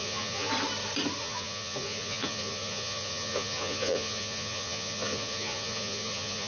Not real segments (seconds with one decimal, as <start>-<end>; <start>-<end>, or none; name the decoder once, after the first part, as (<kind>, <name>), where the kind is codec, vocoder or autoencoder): 0.0-0.5 (vocoder, Vocos); 1.2-6.5